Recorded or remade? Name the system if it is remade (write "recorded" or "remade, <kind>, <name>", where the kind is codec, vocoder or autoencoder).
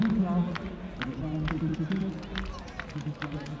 recorded